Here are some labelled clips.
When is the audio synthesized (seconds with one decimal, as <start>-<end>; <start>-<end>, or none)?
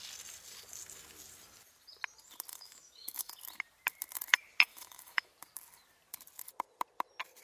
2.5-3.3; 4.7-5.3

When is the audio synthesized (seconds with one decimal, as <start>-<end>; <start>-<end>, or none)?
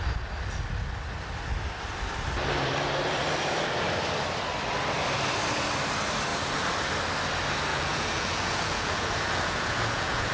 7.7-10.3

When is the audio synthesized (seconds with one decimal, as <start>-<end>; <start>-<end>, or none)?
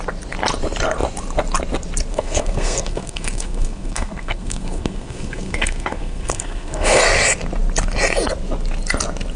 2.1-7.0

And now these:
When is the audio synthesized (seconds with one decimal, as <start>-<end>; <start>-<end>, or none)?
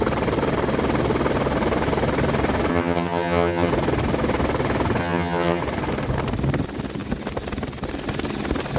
2.7-3.7; 5.0-5.6